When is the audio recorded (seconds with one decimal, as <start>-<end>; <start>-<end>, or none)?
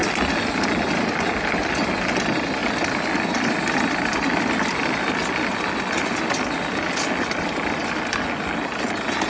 0.0-9.3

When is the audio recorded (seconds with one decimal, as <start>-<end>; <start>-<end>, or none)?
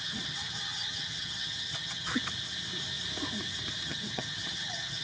2.1-3.8